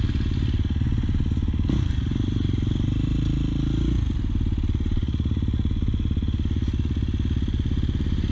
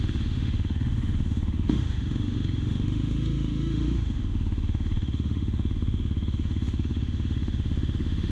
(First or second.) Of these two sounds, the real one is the first